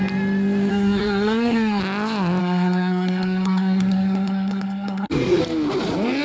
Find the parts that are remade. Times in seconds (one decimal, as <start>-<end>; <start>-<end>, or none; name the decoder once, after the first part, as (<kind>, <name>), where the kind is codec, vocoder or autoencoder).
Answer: 0.7-1.8 (codec, SNAC); 2.4-5.4